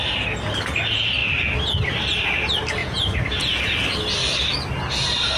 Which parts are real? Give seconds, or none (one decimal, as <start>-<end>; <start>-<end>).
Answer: 0.0-2.8; 3.6-5.4